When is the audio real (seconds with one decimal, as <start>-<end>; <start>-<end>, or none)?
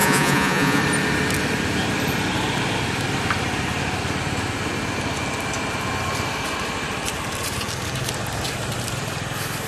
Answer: 0.8-9.7